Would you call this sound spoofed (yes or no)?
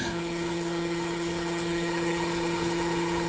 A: yes